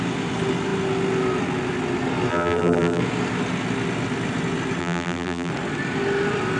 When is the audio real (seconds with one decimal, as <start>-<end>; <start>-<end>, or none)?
0.0-2.3; 3.0-4.8; 5.5-6.6